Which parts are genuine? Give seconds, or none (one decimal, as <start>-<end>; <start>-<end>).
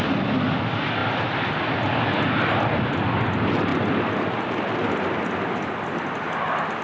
0.0-6.8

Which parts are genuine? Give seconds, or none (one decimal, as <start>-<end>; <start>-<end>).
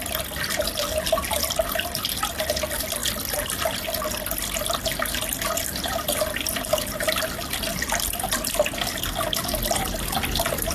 0.0-10.7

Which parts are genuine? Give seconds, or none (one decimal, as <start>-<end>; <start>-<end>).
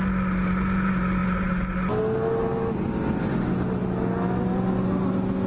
0.0-5.5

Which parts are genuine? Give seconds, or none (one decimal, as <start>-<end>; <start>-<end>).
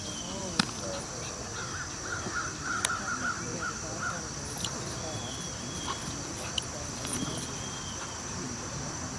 0.0-9.2